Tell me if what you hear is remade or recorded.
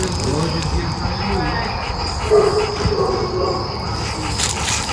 recorded